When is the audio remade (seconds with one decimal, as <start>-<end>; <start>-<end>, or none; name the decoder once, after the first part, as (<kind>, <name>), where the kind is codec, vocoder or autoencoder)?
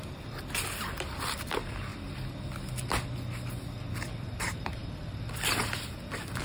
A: 0.0-1.9 (vocoder, BigVGAN v2); 3.9-4.8